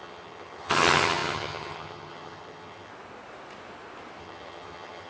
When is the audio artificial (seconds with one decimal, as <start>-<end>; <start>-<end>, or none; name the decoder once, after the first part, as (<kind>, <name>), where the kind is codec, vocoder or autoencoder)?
0.0-2.9 (vocoder, HiFi-GAN); 4.2-5.1